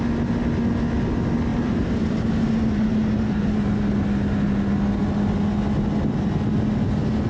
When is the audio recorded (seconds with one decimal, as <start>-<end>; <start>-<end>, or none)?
0.0-1.5; 3.4-7.3